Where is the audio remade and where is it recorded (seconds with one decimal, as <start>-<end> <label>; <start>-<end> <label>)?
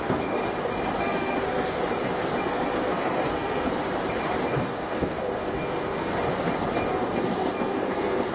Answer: 0.0-0.4 remade; 0.4-1.0 recorded; 1.0-1.8 remade; 1.8-2.4 recorded; 2.4-3.7 remade; 3.7-4.5 recorded; 4.5-6.1 remade; 6.1-6.9 recorded; 6.9-8.3 remade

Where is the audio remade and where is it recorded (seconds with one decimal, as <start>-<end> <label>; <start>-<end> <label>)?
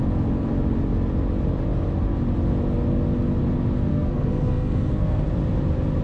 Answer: 0.0-3.9 recorded; 3.9-5.2 remade; 5.2-6.0 recorded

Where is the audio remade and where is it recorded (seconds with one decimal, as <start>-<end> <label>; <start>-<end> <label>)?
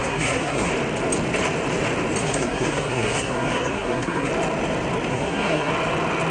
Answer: 0.0-0.7 remade; 0.7-2.2 recorded; 2.2-4.3 remade; 4.3-5.1 recorded; 5.1-5.7 remade; 5.7-6.3 recorded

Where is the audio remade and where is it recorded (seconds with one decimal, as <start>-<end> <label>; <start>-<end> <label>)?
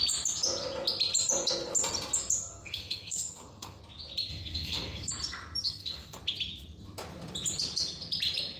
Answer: 0.0-2.5 recorded; 2.5-3.8 remade; 3.8-4.3 recorded; 4.3-5.1 remade; 5.1-5.6 recorded; 5.6-6.2 remade; 6.2-8.6 recorded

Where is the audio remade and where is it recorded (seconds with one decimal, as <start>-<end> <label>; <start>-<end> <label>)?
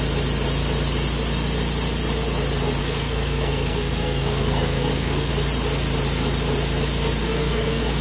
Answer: 0.0-2.8 recorded; 2.8-5.3 remade; 5.3-7.2 recorded; 7.2-8.0 remade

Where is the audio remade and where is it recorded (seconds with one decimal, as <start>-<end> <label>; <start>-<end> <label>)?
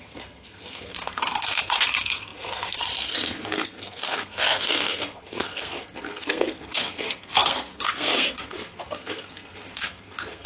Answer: 0.0-10.5 remade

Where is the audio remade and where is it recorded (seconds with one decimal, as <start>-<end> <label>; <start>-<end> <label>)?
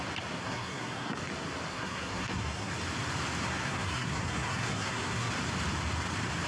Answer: 0.0-0.4 recorded; 0.4-1.2 remade; 1.2-1.7 recorded; 1.7-2.7 remade; 2.7-3.4 recorded; 3.4-5.3 remade; 5.3-6.5 recorded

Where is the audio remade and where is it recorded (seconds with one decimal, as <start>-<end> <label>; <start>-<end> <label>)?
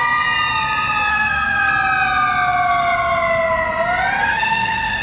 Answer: 0.0-1.1 recorded; 1.1-1.7 remade; 1.7-4.2 recorded; 4.2-5.0 remade